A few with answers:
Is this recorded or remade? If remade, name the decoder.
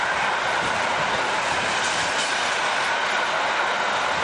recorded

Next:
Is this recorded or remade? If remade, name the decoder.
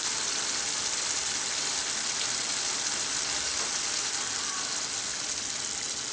recorded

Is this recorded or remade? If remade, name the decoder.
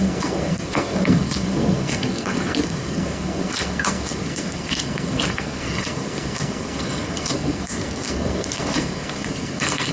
remade, codec, SNAC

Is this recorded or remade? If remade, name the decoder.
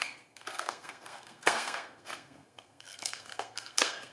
remade, codec, SNAC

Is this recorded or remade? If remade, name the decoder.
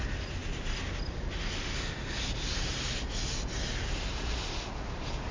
recorded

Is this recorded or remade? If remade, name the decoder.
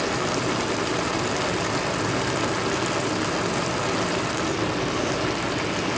recorded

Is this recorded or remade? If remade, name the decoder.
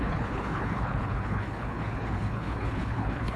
remade, codec, HILCodec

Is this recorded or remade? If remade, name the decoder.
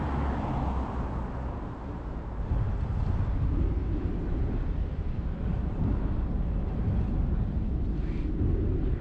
recorded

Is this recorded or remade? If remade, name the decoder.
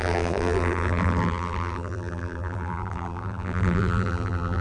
remade, vocoder, BigVGAN v2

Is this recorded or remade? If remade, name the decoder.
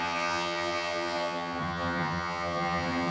remade, vocoder, HiFi-GAN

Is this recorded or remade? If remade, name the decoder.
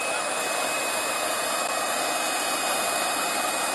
recorded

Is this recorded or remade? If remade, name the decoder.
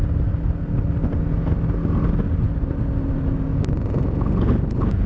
recorded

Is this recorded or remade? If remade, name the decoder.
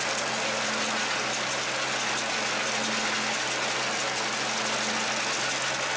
recorded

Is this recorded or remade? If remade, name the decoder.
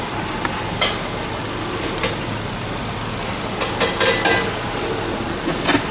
recorded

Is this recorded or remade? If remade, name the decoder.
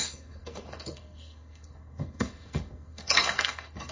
remade, codec, SNAC